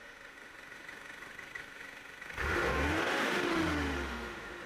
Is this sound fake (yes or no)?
yes